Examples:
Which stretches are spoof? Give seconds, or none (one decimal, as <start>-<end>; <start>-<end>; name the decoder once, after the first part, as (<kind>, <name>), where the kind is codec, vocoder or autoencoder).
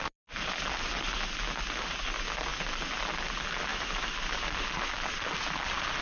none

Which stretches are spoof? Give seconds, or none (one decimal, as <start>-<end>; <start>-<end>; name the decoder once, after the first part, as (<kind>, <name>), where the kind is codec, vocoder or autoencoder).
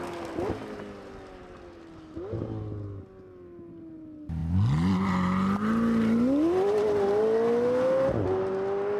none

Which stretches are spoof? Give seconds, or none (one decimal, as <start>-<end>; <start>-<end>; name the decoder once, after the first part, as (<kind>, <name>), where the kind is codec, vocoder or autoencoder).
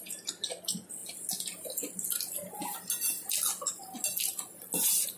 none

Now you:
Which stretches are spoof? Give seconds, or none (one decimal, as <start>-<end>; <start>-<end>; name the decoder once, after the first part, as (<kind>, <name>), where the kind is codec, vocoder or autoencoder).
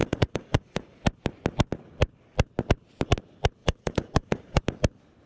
0.0-1.0 (vocoder, Vocos); 3.6-4.6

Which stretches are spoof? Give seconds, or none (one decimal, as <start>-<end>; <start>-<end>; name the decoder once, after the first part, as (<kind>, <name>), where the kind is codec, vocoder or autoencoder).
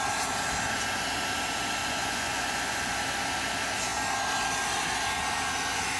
1.8-2.9 (vocoder, Vocos)